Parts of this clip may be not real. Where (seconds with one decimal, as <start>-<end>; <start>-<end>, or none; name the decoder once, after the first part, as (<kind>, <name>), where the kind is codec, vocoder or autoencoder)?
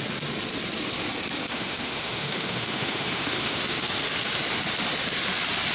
1.5-3.6 (autoencoder, DAC-VAE)